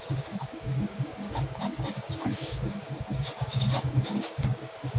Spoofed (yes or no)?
yes